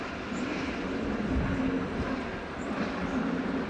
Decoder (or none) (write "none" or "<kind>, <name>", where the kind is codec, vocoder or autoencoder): none